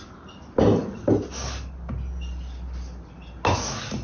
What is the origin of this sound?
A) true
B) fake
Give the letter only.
A